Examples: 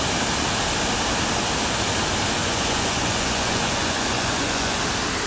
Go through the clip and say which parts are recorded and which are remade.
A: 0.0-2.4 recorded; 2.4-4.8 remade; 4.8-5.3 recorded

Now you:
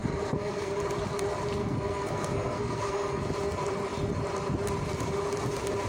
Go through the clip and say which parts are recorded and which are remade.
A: 0.0-0.8 remade; 0.8-1.6 recorded; 1.6-3.2 remade; 3.2-5.9 recorded